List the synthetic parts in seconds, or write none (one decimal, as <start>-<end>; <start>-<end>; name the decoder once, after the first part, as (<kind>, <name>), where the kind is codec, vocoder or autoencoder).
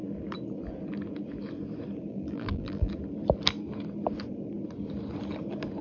2.1-2.9 (vocoder, BigVGAN v2)